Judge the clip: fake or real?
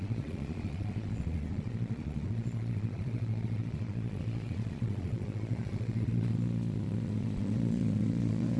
fake